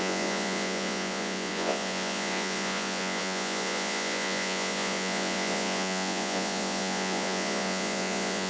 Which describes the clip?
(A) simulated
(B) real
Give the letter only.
A